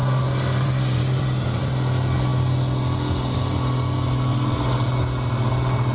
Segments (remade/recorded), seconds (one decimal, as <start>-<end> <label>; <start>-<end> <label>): 0.0-1.6 remade; 1.6-5.9 recorded

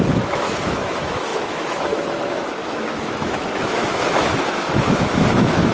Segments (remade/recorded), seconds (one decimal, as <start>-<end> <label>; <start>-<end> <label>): 0.0-5.7 remade

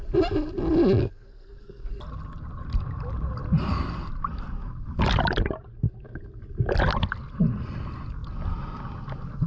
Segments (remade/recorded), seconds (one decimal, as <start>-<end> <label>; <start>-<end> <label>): 0.0-1.0 recorded; 1.0-1.9 remade; 1.9-9.5 recorded

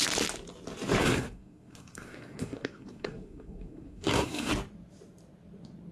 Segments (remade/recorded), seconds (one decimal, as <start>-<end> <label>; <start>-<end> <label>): 0.0-1.0 recorded; 1.0-4.5 remade; 4.5-5.9 recorded

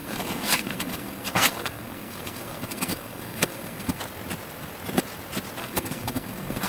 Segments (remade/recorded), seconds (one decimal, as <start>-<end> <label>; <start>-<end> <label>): 0.0-4.0 remade; 4.0-5.6 recorded; 5.6-6.7 remade

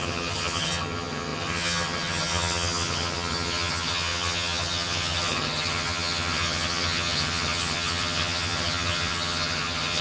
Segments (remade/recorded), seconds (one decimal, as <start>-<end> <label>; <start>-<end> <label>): 0.0-10.0 remade

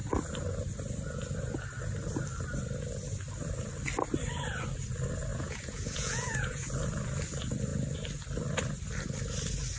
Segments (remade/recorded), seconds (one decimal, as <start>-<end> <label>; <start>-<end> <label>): 0.0-5.3 recorded; 5.3-6.7 remade; 6.7-9.8 recorded